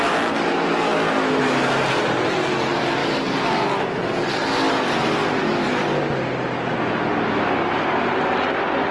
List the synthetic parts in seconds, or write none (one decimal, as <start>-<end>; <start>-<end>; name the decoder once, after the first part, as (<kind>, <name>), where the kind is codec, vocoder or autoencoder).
none